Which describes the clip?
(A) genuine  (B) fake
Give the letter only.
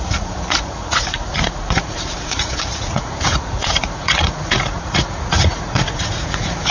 B